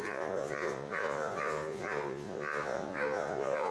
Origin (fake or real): fake